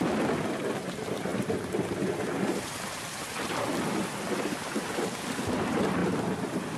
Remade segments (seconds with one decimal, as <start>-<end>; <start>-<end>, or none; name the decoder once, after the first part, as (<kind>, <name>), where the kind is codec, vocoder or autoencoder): none